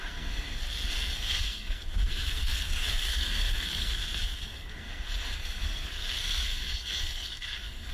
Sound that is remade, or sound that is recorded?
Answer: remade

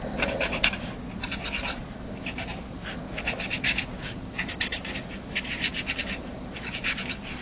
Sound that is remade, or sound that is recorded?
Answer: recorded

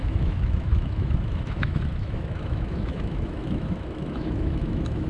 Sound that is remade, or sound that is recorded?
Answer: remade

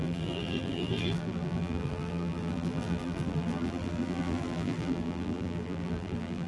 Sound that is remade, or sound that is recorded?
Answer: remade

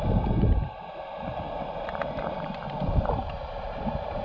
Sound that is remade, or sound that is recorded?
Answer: remade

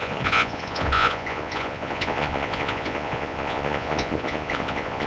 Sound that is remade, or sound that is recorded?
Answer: remade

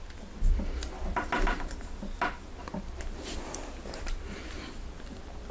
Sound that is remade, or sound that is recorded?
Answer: recorded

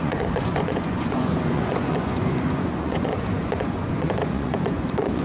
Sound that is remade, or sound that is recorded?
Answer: remade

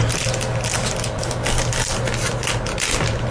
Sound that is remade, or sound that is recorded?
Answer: recorded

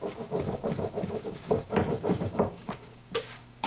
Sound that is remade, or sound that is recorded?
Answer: remade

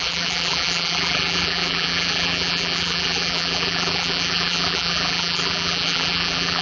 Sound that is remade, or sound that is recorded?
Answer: remade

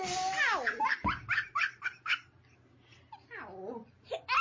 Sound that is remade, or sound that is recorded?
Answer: recorded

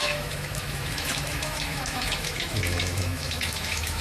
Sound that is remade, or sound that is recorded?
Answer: remade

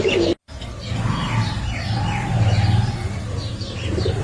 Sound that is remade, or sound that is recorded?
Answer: recorded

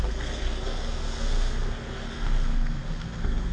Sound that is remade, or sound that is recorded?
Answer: remade